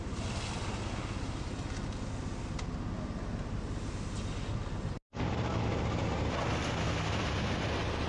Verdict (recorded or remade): recorded